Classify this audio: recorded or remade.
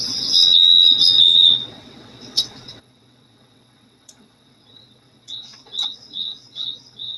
remade